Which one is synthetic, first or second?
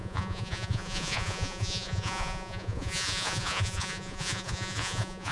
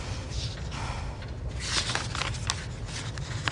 first